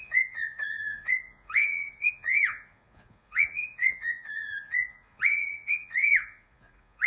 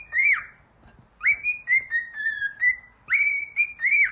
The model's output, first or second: first